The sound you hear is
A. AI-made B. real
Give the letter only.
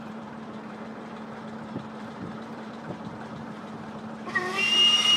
A